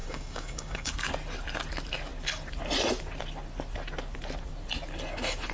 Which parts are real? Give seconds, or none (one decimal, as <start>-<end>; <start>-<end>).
0.9-5.5